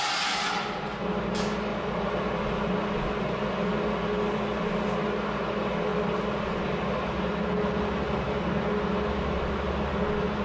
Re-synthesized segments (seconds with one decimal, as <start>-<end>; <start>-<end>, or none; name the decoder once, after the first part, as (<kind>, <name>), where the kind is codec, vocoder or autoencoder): none